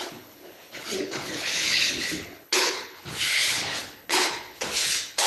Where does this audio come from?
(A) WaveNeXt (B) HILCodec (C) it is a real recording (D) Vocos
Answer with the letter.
B